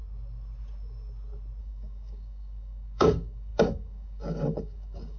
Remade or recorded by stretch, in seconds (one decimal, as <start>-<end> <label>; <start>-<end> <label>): 0.0-1.6 recorded; 1.6-5.2 remade